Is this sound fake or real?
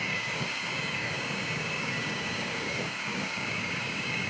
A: fake